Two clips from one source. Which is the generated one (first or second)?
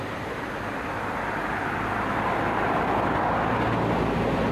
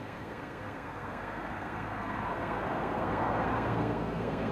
second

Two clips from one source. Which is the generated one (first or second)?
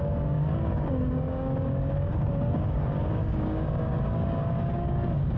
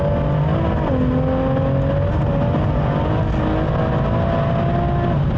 first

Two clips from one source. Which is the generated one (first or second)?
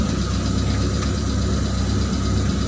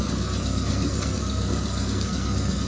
second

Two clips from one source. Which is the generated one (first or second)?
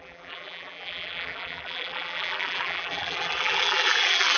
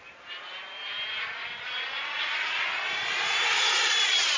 first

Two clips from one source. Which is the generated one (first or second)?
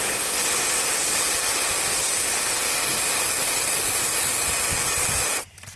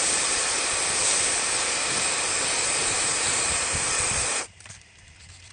second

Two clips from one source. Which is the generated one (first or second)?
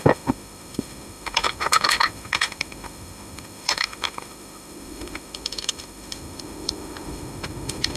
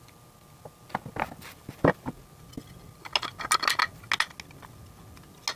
first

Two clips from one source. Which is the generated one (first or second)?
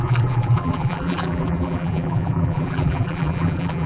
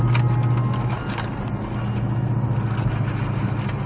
first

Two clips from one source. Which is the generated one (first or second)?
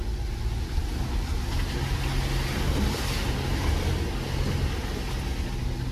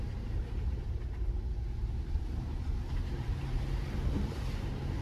second